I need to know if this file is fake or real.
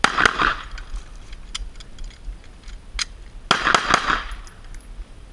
real